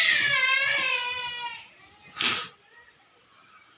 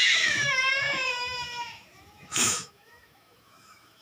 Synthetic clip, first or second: second